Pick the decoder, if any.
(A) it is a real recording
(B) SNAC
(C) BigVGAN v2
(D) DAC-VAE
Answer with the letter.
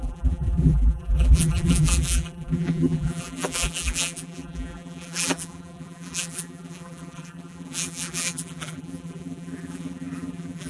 C